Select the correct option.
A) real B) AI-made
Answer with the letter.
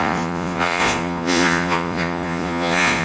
B